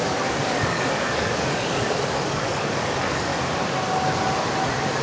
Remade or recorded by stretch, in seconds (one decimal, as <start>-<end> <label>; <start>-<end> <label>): 0.0-3.3 remade; 3.3-5.0 recorded